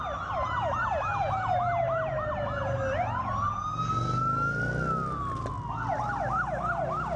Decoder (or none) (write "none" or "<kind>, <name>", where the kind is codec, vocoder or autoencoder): none